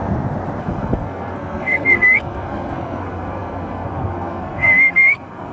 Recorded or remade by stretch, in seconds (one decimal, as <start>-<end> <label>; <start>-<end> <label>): 0.0-0.6 recorded; 0.6-5.5 remade